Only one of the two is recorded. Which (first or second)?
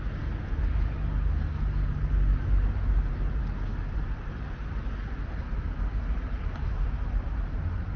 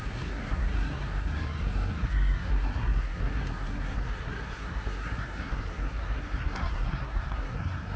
first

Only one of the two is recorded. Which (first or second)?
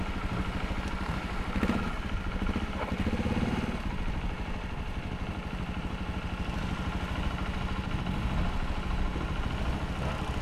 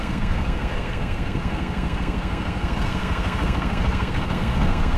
first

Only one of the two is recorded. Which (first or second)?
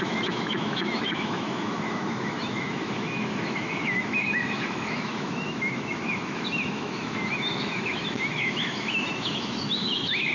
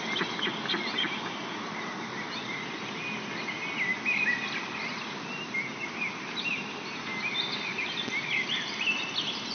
second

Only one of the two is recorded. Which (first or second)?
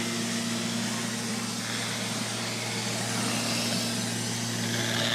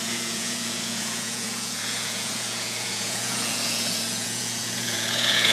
first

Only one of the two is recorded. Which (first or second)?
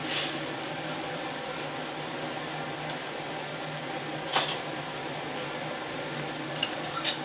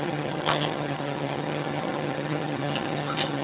first